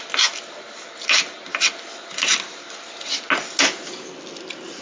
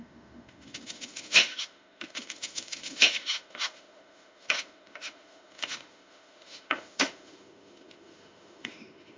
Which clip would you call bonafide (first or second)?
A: first